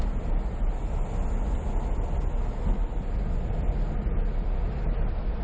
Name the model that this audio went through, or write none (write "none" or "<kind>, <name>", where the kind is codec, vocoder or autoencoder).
none